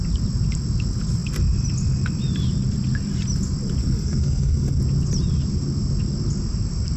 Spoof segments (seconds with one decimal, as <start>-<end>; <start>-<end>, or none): 3.8-4.8